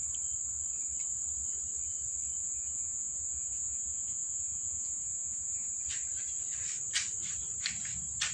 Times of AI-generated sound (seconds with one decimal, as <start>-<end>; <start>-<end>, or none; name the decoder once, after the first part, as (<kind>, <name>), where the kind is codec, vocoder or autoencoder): 2.4-5.7 (vocoder, Vocos)